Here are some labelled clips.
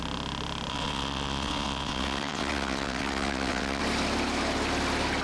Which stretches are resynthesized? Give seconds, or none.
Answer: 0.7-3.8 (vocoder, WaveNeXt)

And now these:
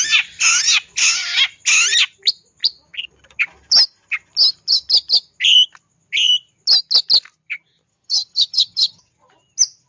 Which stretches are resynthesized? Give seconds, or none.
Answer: 7.9-9.0 (vocoder, HiFi-GAN)

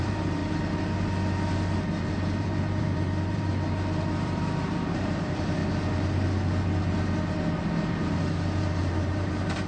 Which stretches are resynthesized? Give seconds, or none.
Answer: 0.0-0.4 (vocoder, BigVGAN v2); 2.4-3.5; 4.1-5.6; 7.6-9.7

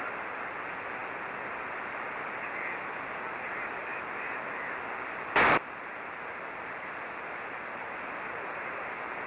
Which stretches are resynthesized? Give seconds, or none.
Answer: none

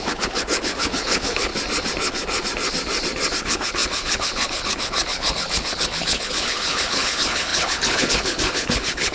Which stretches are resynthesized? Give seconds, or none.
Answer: 0.0-1.5 (codec, HILCodec); 3.4-9.1

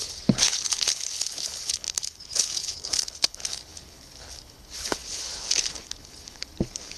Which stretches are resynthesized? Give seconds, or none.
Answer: 0.0-7.0 (codec, HILCodec)

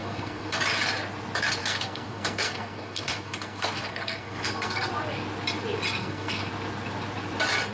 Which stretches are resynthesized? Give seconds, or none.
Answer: 0.0-0.6 (codec, SNAC); 1.6-4.9; 6.0-6.5